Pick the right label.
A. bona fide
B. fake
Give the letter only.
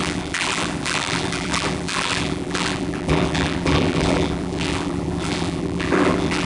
B